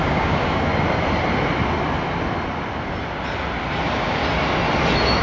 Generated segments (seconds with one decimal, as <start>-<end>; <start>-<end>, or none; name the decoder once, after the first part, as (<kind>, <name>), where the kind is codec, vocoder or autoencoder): 0.0-0.7 (codec, DAC); 3.8-4.2